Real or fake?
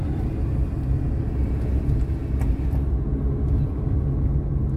real